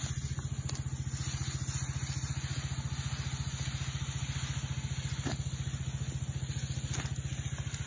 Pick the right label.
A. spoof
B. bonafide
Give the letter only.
B